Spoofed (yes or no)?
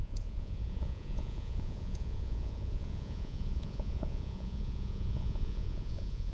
yes